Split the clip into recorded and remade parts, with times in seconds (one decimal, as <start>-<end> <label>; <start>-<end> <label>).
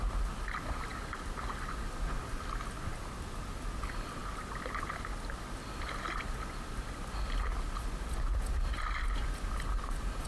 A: 0.0-10.3 recorded